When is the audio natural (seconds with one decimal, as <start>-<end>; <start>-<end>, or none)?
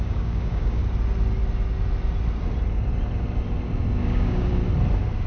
0.8-4.0; 4.6-5.3